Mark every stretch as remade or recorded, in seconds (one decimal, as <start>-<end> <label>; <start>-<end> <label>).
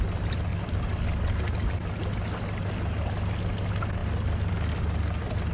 0.0-5.5 recorded